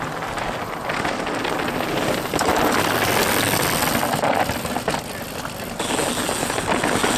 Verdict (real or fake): real